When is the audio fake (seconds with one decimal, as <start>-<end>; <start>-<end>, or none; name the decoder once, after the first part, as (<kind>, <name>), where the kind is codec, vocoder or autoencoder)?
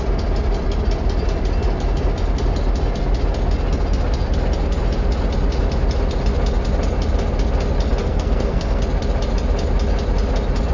8.0-8.8 (codec, SNAC)